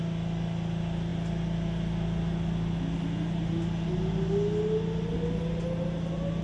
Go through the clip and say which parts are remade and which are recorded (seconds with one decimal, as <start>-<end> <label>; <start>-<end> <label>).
0.0-6.4 recorded